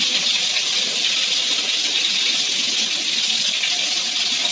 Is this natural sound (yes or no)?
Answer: yes